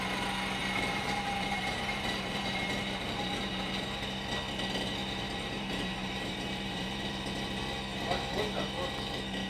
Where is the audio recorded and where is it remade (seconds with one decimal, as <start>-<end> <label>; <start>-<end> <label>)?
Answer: 0.0-0.6 recorded; 0.6-3.7 remade; 3.7-5.0 recorded; 5.0-7.2 remade; 7.2-9.5 recorded